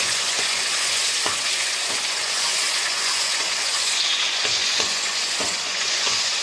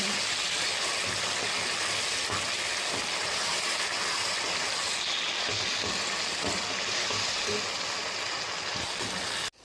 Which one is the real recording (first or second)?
second